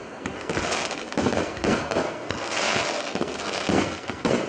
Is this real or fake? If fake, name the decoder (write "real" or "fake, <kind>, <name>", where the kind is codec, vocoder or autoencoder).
fake, codec, SNAC